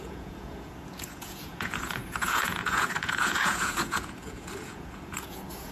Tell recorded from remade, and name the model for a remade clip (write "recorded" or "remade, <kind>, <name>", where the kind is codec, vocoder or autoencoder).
remade, vocoder, Vocos